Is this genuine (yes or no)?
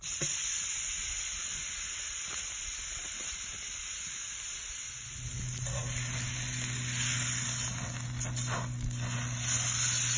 yes